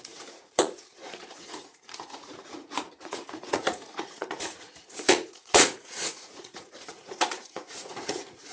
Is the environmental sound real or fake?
fake